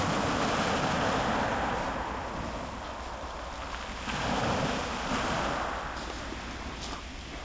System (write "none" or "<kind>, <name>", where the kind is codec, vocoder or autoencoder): none